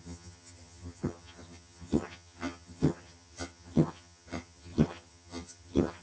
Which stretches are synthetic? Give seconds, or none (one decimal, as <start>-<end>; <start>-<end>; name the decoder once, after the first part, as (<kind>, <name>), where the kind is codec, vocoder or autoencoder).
0.0-6.0 (vocoder, HiFi-GAN)